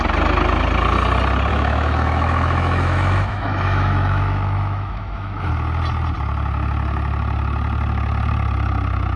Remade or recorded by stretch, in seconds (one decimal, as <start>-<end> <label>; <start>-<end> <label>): 0.0-1.5 recorded; 1.5-5.5 remade; 5.5-9.2 recorded